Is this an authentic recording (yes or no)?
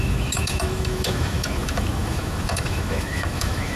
no